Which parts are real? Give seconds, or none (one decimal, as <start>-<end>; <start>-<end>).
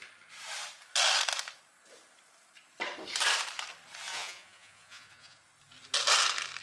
0.0-4.1; 5.4-6.6